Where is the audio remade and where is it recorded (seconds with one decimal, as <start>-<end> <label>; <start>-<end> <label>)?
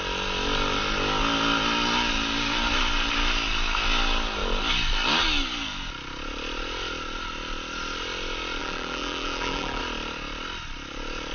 0.0-8.6 recorded; 8.6-9.8 remade; 9.8-11.3 recorded